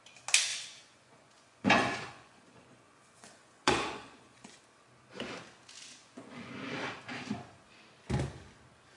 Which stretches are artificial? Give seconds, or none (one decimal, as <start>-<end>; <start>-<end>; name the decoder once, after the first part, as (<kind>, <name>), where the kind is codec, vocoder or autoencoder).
0.5-4.6 (vocoder, Vocos); 6.0-6.5